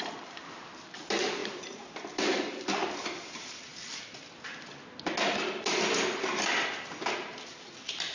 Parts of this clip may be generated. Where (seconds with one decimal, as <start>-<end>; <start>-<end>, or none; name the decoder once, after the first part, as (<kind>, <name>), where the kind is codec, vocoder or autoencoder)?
0.0-3.7 (vocoder, BigVGAN v2)